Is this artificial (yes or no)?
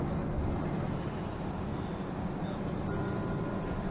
no